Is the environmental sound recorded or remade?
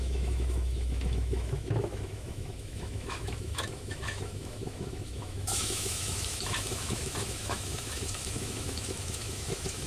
remade